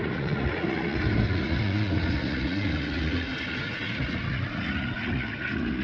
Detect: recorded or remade remade